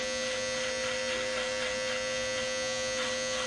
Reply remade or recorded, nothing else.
recorded